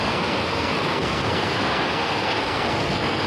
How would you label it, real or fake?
fake